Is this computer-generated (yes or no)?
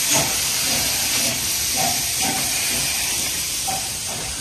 no